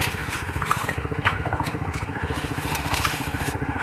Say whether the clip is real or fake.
fake